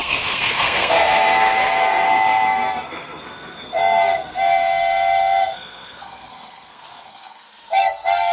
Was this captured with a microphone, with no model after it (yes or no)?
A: no